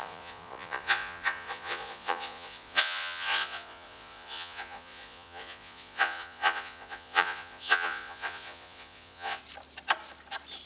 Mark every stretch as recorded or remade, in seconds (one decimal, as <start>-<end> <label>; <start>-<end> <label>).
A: 0.0-9.4 remade; 9.4-10.7 recorded